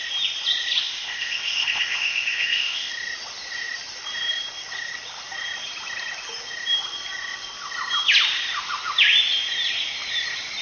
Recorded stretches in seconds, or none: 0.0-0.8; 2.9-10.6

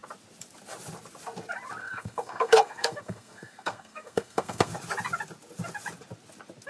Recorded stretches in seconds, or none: 0.0-1.8; 4.7-6.7

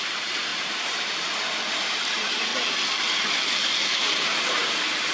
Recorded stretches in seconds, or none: 2.5-4.0

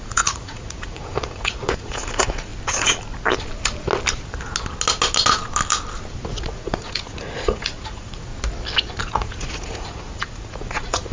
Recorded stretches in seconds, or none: 2.5-6.4; 8.3-9.0

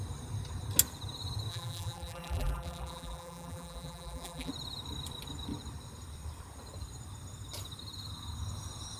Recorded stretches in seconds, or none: 0.0-1.5; 4.5-9.0

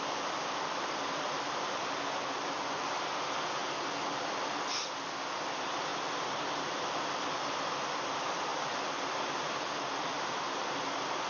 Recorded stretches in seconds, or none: 3.6-4.7

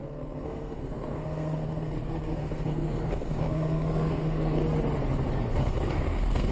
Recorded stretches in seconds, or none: 4.6-5.3

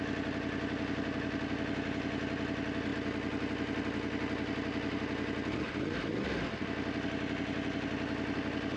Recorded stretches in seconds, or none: 0.0-8.8